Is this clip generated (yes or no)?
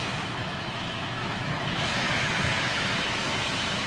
yes